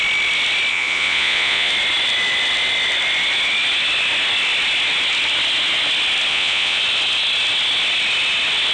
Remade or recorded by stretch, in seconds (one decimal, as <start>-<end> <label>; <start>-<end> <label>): 0.0-0.7 recorded; 0.7-1.7 remade; 1.7-6.3 recorded; 6.3-6.8 remade; 6.8-8.7 recorded